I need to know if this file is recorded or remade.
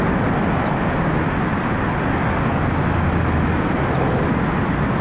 recorded